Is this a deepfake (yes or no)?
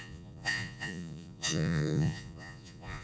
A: yes